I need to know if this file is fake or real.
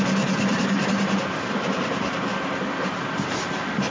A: real